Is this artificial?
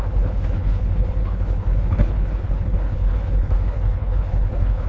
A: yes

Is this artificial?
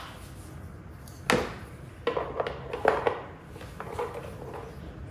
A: no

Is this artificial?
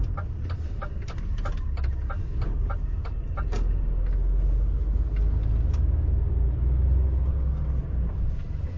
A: no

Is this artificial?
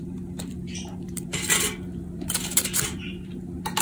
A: yes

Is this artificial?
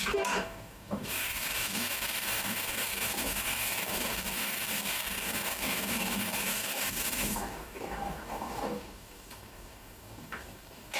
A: yes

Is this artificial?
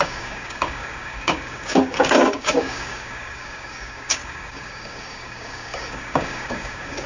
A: yes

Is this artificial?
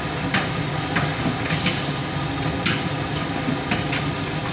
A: no